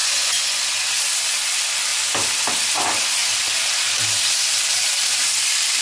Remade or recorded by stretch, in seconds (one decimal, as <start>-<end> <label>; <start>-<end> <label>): 0.0-0.6 remade; 0.6-5.8 recorded